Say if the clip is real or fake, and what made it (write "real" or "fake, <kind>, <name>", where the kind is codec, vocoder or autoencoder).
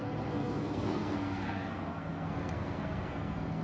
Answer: fake, codec, SNAC